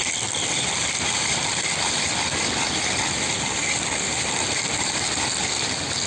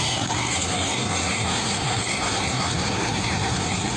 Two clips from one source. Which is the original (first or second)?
first